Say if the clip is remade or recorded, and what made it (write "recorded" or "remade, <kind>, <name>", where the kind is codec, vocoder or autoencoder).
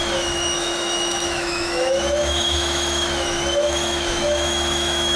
remade, autoencoder, DAC-VAE